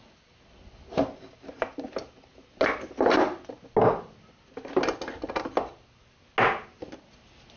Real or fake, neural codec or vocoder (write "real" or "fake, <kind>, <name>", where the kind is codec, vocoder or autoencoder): real